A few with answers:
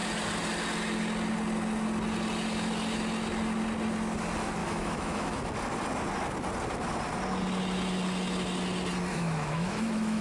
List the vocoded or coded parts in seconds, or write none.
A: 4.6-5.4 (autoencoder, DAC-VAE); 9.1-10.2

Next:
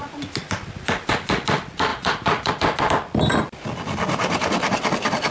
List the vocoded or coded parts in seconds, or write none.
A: 1.9-2.5 (vocoder, Vocos)

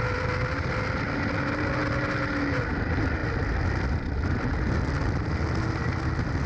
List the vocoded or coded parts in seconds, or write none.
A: 3.2-4.1 (vocoder, BigVGAN v2)

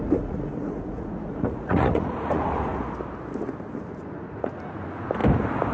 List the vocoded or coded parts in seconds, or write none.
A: 0.0-2.8 (vocoder, Vocos); 3.9-4.8

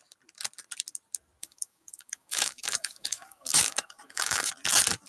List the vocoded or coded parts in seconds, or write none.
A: 1.4-4.5 (codec, DAC)

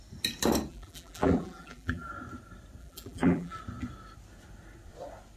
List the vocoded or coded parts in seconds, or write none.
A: 0.7-2.1 (vocoder, BigVGAN v2); 2.8-3.6

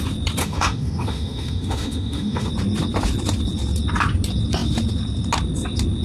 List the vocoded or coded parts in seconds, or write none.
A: 0.4-2.5 (autoencoder, DAC-VAE)

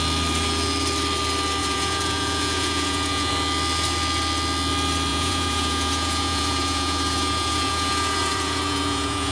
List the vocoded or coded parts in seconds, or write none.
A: 1.6-3.3 (vocoder, Vocos); 5.1-9.3